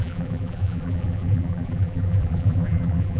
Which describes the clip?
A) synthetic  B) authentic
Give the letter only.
A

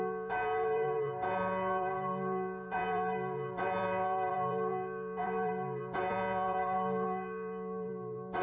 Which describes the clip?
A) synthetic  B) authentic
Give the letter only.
A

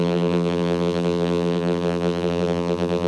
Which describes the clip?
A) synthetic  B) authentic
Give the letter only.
A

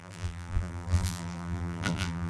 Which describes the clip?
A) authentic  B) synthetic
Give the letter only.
B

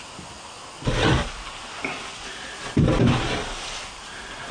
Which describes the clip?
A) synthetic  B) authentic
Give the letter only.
B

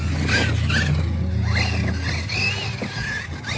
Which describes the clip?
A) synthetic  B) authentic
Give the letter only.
B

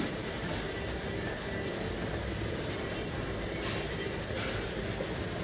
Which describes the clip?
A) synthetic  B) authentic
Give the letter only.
B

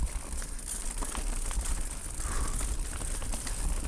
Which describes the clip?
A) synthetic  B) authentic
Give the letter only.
B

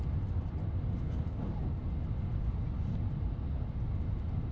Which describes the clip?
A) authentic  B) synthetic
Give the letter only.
A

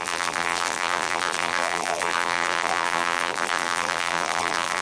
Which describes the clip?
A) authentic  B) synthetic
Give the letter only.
B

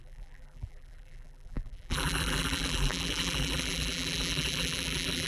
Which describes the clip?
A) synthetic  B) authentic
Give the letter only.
A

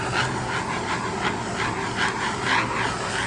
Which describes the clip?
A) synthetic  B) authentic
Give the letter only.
B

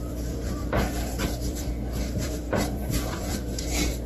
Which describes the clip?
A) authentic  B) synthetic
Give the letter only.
B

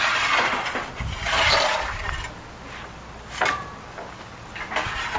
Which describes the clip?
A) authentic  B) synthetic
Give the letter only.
A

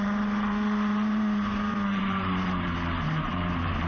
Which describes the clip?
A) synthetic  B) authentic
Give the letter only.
A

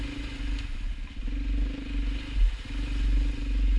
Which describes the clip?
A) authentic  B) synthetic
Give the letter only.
A